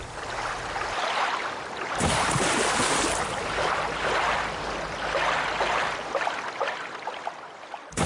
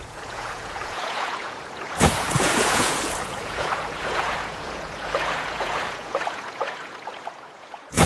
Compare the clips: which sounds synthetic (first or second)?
second